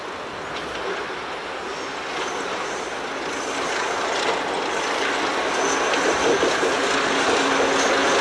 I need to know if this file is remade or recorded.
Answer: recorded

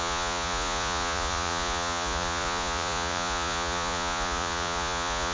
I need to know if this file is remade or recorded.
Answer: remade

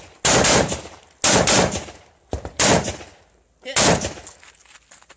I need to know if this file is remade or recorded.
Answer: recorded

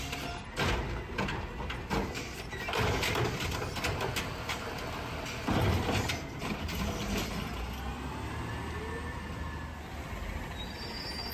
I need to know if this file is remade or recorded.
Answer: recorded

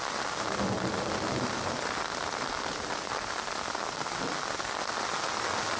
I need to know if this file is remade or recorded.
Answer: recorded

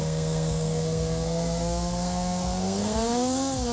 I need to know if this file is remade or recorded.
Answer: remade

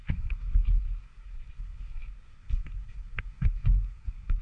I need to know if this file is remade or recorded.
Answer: remade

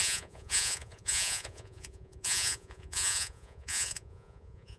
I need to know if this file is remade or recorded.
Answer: remade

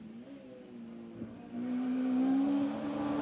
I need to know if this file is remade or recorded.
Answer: recorded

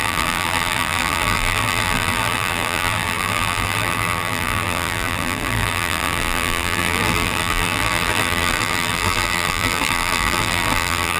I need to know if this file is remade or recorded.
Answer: remade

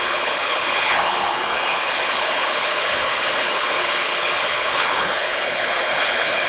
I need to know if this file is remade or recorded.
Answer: remade